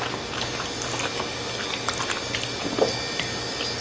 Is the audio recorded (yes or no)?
yes